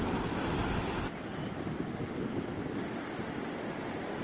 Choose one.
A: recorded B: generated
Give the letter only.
A